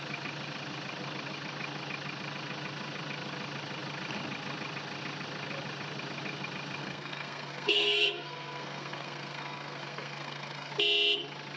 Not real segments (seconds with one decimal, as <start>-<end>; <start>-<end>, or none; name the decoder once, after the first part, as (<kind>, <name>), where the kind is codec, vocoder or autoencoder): 6.8-10.7 (codec, SNAC)